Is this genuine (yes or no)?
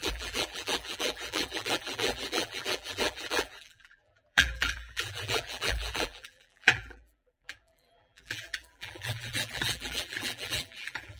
no